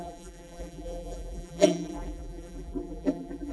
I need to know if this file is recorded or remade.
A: remade